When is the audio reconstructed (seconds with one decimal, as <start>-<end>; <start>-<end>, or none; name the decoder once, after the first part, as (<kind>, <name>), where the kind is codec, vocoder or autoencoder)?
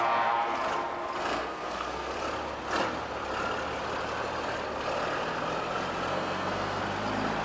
1.2-2.1 (codec, SNAC); 6.1-6.8